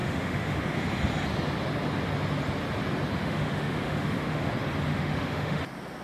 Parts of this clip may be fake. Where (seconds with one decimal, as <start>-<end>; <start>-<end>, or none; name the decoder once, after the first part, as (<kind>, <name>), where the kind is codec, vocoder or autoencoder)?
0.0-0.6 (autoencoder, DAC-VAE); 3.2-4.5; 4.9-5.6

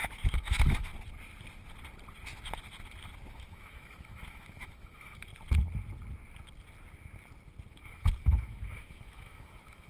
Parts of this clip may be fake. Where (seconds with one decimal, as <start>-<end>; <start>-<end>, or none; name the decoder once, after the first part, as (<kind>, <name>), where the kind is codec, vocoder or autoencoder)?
0.0-0.9 (autoencoder, DAC-VAE); 3.3-5.3; 7.7-9.9

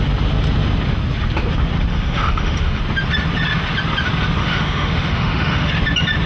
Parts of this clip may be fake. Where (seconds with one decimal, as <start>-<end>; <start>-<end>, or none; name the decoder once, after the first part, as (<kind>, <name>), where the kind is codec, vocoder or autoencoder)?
1.9-2.8 (autoencoder, DAC-VAE); 4.4-5.7

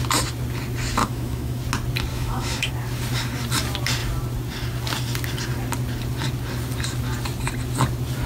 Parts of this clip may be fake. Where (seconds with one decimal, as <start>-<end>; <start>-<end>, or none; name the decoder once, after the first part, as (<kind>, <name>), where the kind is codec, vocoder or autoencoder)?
1.0-1.6 (autoencoder, DAC-VAE); 2.1-2.7

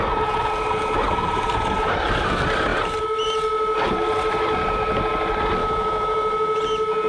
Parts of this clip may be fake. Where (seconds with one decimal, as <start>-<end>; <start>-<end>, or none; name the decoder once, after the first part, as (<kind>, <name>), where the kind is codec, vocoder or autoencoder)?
5.6-6.6 (autoencoder, DAC-VAE)

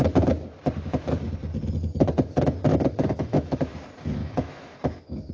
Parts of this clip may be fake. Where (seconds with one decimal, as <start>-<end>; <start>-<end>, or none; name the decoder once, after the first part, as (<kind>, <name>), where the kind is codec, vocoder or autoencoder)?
2.7-3.7 (autoencoder, DAC-VAE); 4.2-5.3